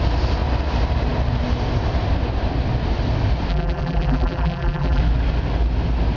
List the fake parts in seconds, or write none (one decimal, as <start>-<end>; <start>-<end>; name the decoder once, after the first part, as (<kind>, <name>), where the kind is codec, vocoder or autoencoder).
3.5-5.0 (vocoder, BigVGAN v2)